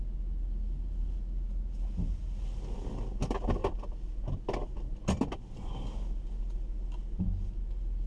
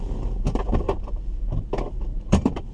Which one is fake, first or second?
second